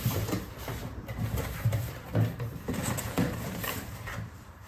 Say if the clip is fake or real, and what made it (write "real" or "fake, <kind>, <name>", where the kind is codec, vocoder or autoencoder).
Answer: fake, vocoder, BigVGAN v2